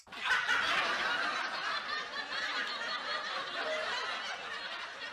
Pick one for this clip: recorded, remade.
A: recorded